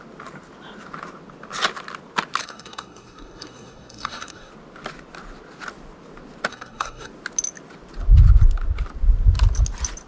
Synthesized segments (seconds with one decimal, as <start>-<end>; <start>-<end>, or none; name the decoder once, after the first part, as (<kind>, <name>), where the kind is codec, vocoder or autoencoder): 2.4-4.5 (codec, SNAC); 6.5-7.1